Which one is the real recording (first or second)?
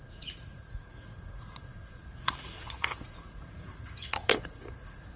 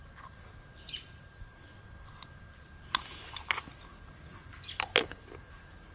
second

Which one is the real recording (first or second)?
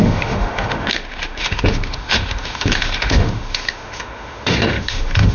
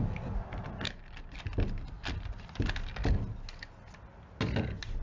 second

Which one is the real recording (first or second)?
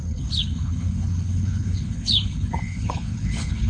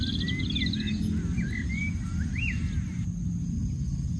second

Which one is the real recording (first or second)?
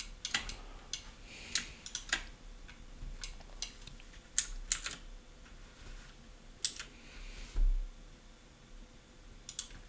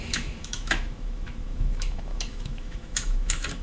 first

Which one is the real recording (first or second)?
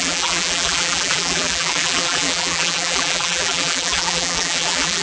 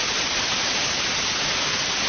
second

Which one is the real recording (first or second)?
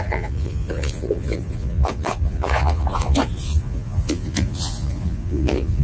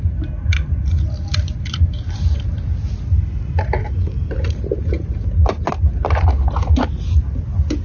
second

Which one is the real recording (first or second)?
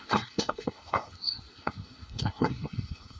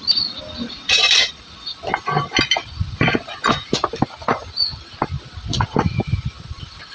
second